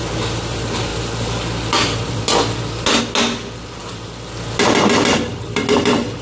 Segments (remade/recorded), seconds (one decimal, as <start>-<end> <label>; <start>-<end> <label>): 0.0-6.2 recorded